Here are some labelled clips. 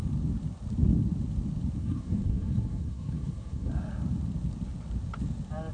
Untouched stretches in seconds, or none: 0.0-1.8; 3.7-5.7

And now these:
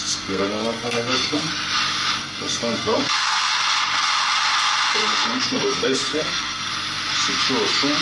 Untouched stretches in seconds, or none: 1.5-2.2; 3.5-5.0; 6.7-8.0

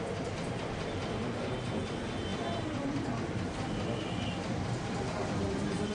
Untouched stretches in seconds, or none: 0.0-5.9

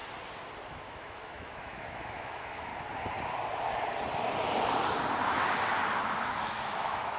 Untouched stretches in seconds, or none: 0.0-0.7; 2.7-6.4